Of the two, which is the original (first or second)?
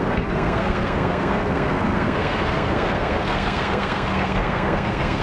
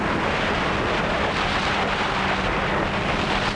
second